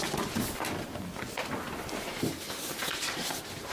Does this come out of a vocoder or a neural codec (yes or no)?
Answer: no